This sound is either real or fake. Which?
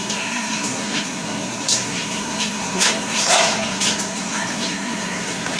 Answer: fake